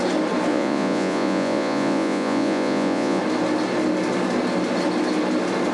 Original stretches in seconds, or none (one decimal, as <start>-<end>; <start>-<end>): 0.0-0.5; 3.2-5.7